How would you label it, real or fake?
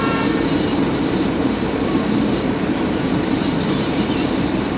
fake